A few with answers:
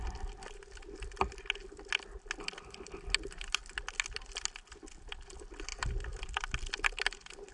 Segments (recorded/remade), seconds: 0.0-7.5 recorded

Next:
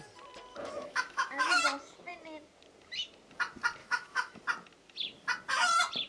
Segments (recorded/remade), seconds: 0.0-0.5 recorded; 0.5-1.6 remade; 1.6-3.8 recorded; 3.8-4.4 remade; 4.4-6.1 recorded